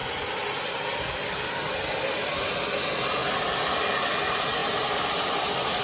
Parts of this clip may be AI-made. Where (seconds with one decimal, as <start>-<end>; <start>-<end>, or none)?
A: none